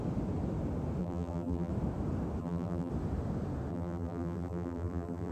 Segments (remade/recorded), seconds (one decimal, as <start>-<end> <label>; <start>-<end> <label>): 0.0-1.0 recorded; 1.0-1.7 remade; 1.7-2.4 recorded; 2.4-2.9 remade; 2.9-3.7 recorded; 3.7-5.3 remade